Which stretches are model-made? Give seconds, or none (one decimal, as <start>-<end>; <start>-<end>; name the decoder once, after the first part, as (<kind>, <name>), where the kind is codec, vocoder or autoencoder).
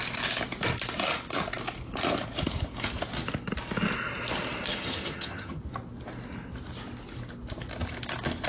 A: 4.7-5.6 (vocoder, HiFi-GAN)